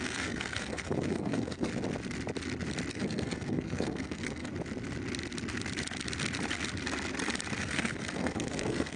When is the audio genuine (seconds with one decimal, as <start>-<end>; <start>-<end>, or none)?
1.7-2.9; 4.5-7.6